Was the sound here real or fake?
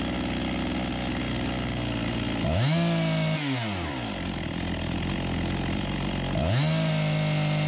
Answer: real